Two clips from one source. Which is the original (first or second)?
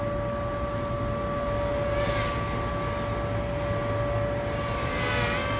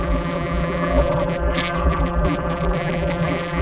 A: first